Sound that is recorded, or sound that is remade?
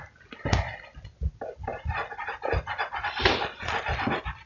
recorded